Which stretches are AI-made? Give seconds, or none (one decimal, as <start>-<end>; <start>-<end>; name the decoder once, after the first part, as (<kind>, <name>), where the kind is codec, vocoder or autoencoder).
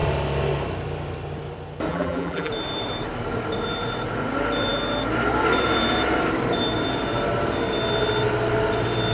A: 1.9-2.5 (vocoder, BigVGAN v2)